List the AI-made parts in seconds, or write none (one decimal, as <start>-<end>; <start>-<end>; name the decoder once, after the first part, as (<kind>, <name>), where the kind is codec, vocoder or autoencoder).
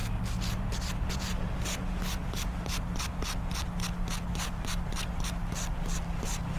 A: none